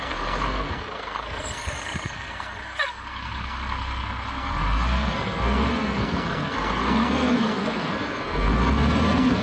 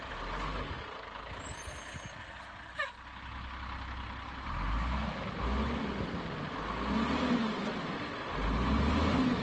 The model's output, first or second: first